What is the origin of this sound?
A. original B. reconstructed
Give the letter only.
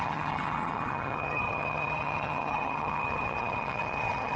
B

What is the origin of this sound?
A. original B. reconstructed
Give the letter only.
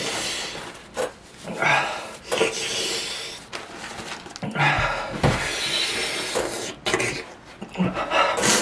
A